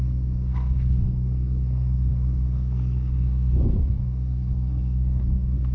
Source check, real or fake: fake